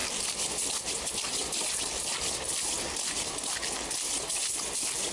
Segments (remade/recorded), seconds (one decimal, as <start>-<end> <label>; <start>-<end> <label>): 0.0-5.1 recorded